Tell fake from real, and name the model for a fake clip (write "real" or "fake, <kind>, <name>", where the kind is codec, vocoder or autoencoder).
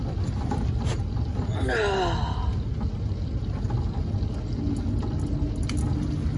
real